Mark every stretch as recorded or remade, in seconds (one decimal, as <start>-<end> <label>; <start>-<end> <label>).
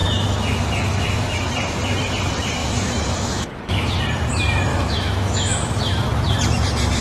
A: 0.0-1.5 remade; 1.5-2.6 recorded; 2.6-4.0 remade; 4.0-4.7 recorded; 4.7-6.1 remade; 6.1-7.0 recorded